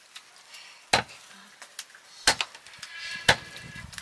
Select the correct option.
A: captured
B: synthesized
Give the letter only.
A